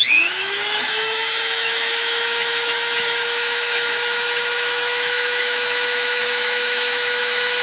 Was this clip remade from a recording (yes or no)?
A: yes